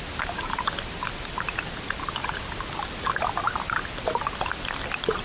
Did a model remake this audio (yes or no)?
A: no